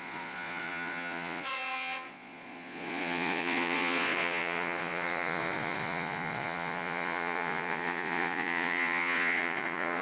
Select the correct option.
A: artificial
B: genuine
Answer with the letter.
A